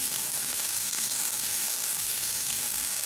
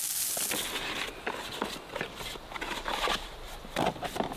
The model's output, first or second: first